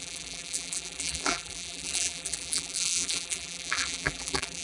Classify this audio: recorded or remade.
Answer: remade